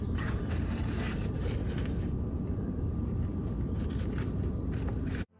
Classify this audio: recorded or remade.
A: remade